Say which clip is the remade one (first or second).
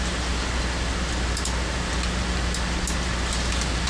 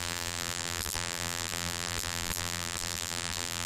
second